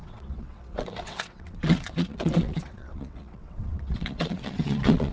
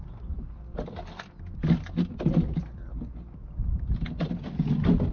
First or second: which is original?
second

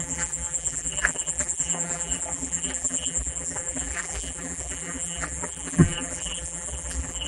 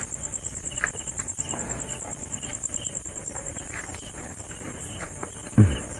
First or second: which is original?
second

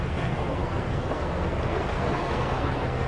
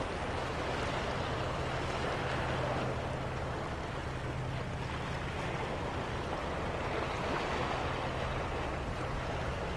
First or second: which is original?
second